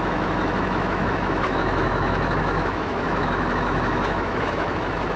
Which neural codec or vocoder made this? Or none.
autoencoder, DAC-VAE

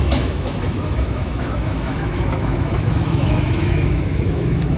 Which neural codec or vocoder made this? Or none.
autoencoder, DAC-VAE